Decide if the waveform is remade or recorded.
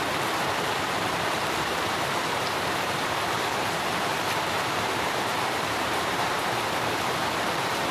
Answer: remade